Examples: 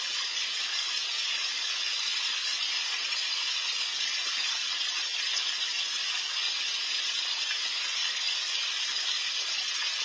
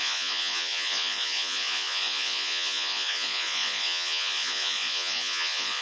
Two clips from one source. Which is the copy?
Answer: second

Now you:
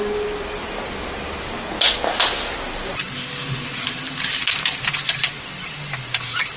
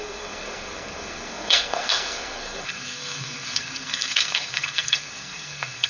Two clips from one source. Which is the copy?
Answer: second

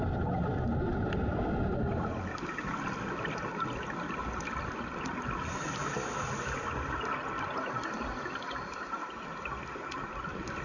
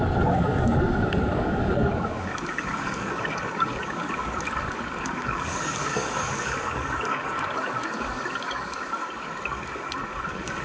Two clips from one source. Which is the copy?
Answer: second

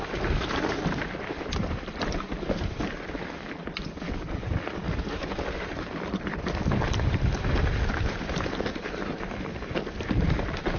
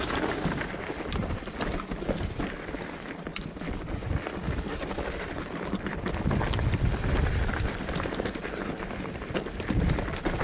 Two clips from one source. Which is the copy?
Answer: first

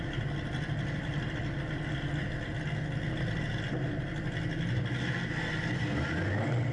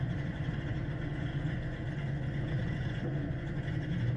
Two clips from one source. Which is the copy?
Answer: second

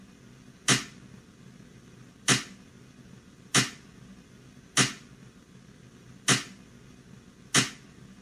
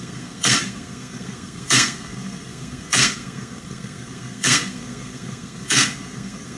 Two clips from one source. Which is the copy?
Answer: second